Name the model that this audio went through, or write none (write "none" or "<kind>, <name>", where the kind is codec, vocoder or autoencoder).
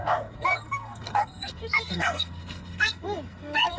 codec, SNAC